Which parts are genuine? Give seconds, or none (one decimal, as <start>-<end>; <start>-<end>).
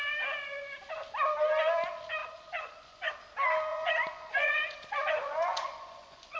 0.0-2.2; 3.1-3.7